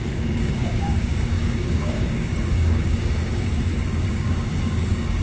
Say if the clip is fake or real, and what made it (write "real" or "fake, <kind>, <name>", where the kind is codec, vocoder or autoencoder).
fake, codec, DAC